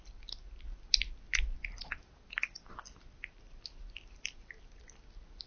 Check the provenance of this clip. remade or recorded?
recorded